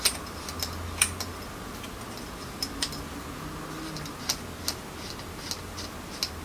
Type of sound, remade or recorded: recorded